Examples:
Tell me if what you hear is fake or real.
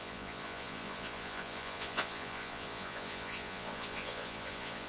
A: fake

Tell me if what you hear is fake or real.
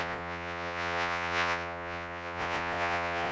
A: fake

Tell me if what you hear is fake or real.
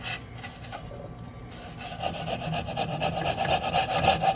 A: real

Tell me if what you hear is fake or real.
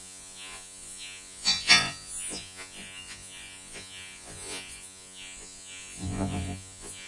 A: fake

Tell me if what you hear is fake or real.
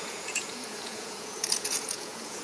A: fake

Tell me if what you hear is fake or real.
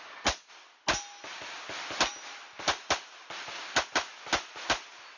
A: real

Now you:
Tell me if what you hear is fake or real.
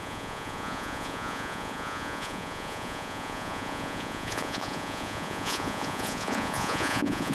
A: fake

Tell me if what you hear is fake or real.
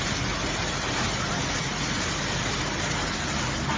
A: real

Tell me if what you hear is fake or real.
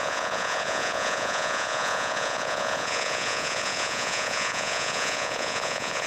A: fake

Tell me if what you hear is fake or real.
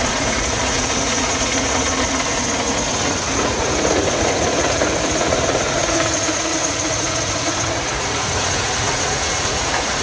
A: fake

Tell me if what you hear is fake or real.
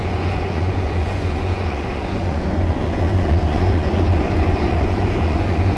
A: fake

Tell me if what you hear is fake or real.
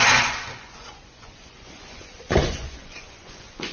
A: fake